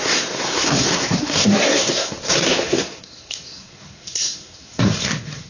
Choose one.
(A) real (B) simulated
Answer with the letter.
B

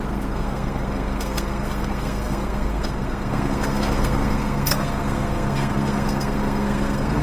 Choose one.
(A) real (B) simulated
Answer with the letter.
B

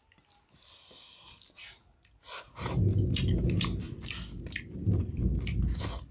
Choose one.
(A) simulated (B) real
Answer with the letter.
B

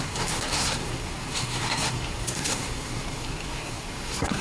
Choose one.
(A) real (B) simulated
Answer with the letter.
B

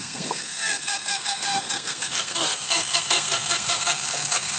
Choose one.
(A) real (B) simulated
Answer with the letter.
B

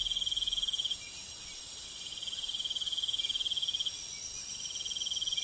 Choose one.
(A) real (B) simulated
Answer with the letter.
A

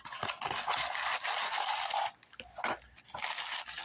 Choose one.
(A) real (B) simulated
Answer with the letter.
A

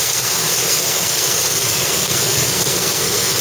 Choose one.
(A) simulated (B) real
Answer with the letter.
A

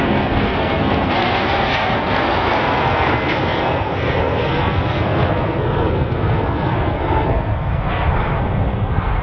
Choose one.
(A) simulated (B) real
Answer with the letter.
A